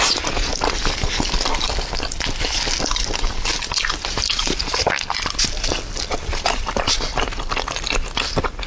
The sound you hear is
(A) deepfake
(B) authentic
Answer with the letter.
B